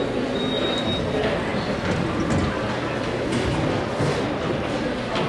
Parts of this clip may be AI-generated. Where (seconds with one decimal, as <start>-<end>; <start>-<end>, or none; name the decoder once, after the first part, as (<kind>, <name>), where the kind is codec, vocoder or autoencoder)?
none